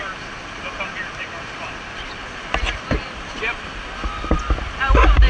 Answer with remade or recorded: recorded